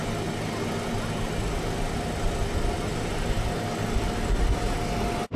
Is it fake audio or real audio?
real